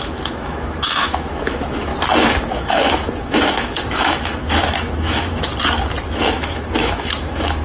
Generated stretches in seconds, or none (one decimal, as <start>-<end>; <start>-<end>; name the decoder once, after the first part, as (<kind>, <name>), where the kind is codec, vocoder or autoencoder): 0.0-1.9 (autoencoder, DAC-VAE); 2.6-5.5; 6.1-7.6

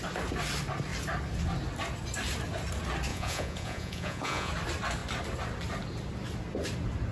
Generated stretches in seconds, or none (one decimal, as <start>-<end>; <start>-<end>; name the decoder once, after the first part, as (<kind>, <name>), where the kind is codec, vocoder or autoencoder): 3.1-4.5 (vocoder, Vocos)

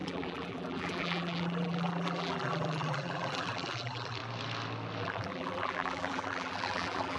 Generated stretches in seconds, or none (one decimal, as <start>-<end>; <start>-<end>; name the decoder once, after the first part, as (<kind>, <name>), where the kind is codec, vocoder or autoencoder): 0.0-4.2 (vocoder, BigVGAN v2); 5.0-7.2

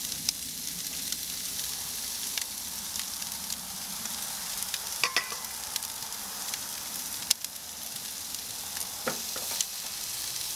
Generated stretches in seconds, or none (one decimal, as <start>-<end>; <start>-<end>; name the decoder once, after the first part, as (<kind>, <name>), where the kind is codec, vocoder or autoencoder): 3.2-7.0 (vocoder, BigVGAN v2)